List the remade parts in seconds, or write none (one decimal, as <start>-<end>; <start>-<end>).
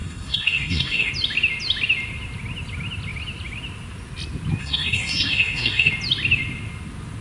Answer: 0.0-1.1; 4.6-5.9